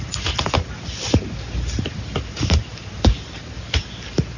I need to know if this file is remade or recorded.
recorded